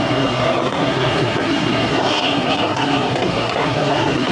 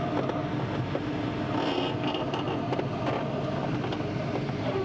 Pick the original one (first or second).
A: second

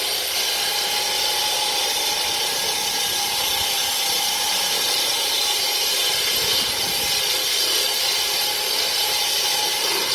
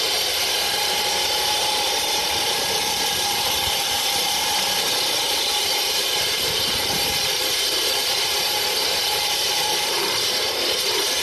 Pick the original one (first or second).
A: first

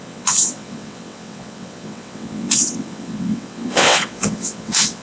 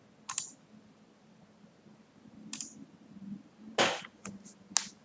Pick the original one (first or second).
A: second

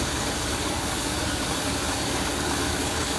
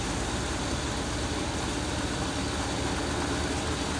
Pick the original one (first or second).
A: second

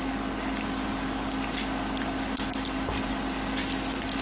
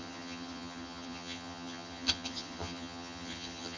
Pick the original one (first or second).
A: first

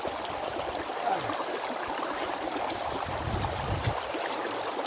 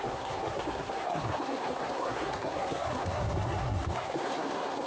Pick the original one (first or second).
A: first